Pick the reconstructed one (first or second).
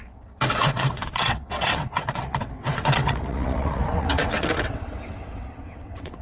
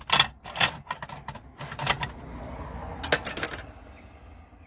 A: first